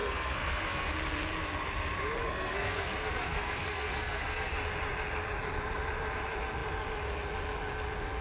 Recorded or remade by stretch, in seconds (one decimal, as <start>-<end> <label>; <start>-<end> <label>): 0.0-0.9 remade; 0.9-2.2 recorded; 2.2-4.5 remade; 4.5-8.2 recorded